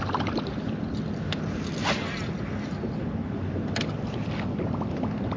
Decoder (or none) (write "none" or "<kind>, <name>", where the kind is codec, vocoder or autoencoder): none